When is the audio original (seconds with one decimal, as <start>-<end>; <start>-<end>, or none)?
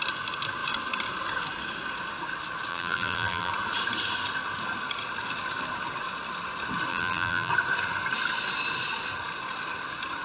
0.0-2.7; 3.5-6.9; 7.5-10.2